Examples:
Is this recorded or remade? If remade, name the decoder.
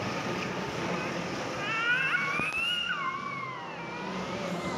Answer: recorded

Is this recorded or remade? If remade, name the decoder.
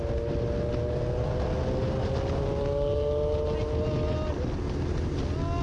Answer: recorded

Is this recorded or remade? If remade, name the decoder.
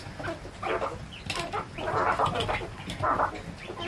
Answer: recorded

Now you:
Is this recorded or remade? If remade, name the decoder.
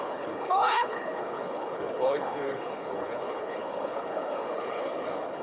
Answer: remade, codec, HILCodec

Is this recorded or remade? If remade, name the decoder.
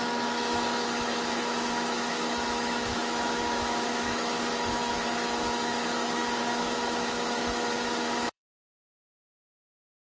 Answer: remade, autoencoder, DAC-VAE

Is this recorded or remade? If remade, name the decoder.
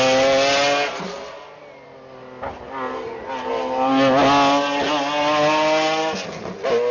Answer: recorded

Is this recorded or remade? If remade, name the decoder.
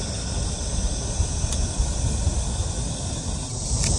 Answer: recorded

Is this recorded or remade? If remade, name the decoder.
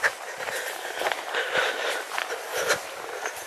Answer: remade, vocoder, BigVGAN v2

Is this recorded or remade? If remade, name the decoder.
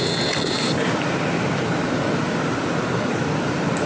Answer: recorded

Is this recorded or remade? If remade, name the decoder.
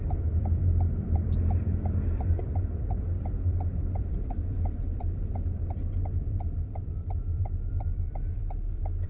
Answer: remade, vocoder, BigVGAN v2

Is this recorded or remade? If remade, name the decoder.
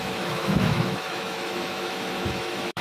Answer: remade, autoencoder, DAC-VAE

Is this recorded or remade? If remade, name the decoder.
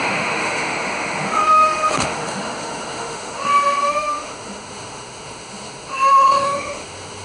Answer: remade, autoencoder, DAC-VAE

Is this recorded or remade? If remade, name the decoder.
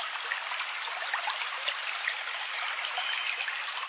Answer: recorded